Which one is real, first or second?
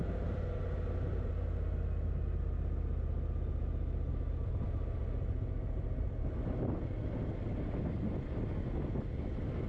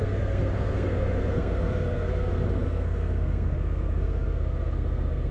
first